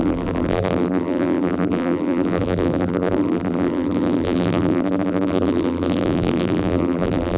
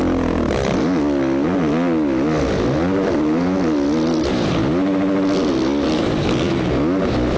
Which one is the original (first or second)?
second